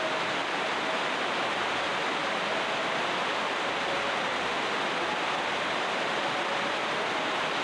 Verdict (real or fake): real